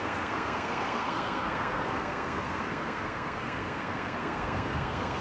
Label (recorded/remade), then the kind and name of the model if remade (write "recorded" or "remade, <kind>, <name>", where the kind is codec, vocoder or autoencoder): remade, codec, SNAC